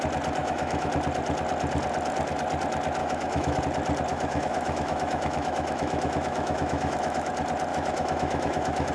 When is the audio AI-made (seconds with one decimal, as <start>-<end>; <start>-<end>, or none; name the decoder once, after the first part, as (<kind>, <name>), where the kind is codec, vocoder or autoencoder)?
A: 0.4-0.9 (autoencoder, DAC-VAE); 3.0-3.6; 4.1-7.3; 7.7-8.9